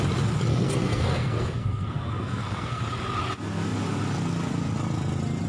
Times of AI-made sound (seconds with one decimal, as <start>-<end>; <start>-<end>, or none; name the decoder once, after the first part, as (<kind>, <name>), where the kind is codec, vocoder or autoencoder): 0.5-2.8 (codec, SNAC)